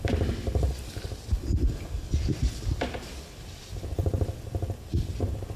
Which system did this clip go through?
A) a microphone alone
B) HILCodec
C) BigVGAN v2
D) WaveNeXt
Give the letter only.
C